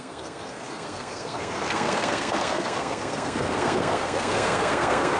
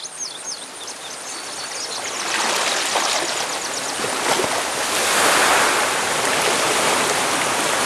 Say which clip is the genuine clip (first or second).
second